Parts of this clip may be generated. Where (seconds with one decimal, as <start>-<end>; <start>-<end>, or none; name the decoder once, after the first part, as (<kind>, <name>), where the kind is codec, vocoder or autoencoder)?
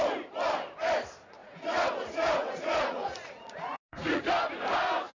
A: 1.4-4.3 (vocoder, Vocos)